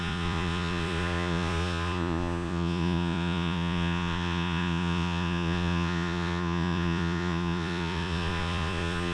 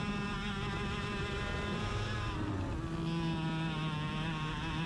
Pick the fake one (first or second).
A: first